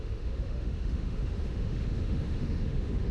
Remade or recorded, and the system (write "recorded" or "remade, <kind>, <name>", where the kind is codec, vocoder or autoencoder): remade, autoencoder, DAC-VAE